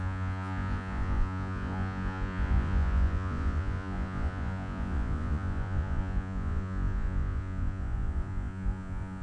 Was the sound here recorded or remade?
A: remade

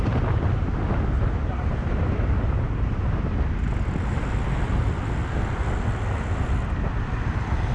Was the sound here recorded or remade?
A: recorded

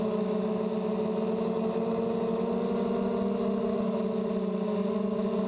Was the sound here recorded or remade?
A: recorded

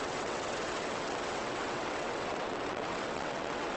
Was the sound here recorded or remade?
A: remade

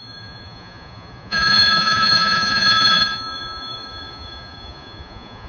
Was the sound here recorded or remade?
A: remade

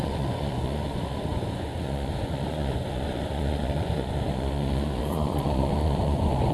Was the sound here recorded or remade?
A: remade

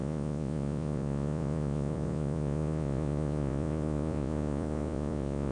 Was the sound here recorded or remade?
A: remade